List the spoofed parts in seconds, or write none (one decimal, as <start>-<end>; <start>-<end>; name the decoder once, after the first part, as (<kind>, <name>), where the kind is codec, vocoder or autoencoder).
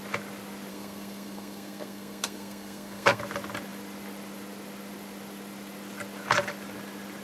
0.7-3.2 (codec, SNAC)